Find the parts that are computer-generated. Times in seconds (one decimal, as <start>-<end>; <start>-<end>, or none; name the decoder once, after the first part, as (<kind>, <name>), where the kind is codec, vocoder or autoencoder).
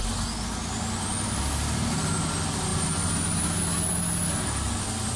none